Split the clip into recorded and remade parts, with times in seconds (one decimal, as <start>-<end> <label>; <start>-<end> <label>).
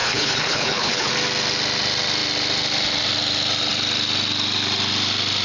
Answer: 0.0-1.1 remade; 1.1-5.4 recorded